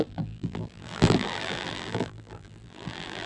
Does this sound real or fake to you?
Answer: fake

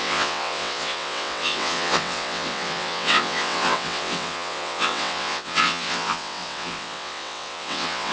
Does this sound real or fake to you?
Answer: fake